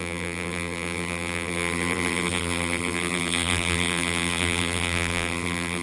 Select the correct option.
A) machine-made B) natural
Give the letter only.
A